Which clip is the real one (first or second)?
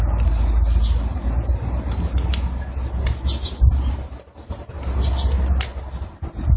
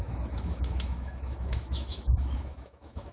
first